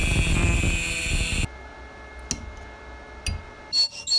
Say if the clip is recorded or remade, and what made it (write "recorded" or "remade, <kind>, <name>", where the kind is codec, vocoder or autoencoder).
recorded